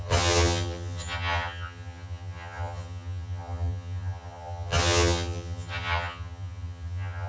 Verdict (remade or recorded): remade